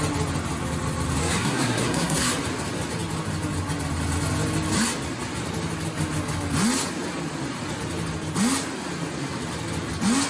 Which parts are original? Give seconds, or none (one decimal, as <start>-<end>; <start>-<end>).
0.0-1.2; 2.3-10.3